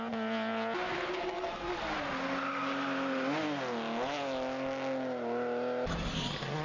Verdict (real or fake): real